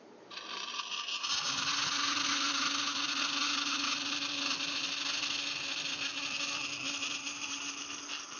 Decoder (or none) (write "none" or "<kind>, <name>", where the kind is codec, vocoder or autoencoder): none